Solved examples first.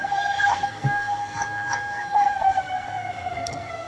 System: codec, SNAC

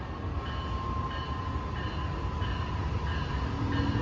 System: none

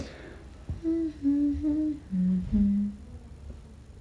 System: none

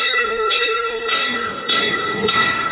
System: codec, SNAC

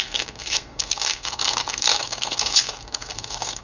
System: codec, SNAC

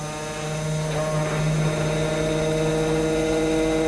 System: none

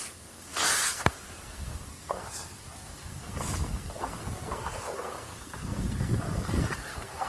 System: codec, SNAC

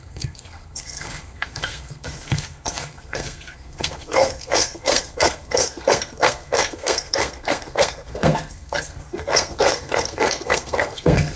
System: codec, SNAC